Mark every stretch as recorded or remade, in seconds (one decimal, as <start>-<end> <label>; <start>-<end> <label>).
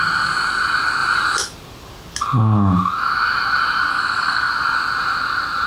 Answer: 0.0-3.9 recorded; 3.9-4.5 remade; 4.5-5.7 recorded